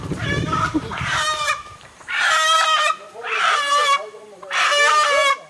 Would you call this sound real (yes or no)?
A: no